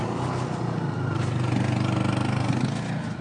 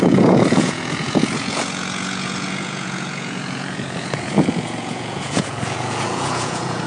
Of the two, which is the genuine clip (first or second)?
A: first